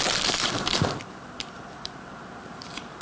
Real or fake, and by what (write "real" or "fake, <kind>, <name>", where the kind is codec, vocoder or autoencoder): fake, vocoder, BigVGAN v2